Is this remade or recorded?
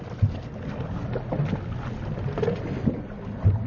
recorded